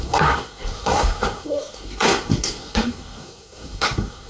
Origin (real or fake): fake